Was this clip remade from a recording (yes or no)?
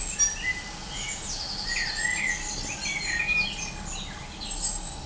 no